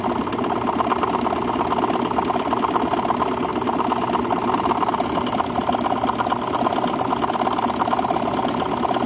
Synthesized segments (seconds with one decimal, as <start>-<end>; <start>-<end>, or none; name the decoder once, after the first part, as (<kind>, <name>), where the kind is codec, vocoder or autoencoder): none